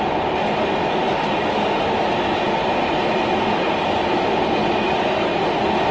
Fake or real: real